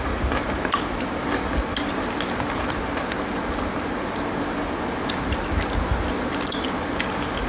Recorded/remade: recorded